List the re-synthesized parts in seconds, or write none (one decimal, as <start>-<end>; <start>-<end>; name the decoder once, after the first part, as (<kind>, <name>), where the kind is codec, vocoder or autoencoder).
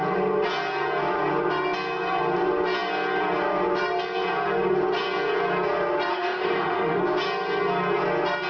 6.1-7.0 (autoencoder, DAC-VAE)